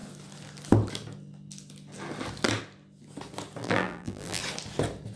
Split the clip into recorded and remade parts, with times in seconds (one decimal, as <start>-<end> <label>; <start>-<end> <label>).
0.0-3.6 recorded; 3.6-4.4 remade; 4.4-5.2 recorded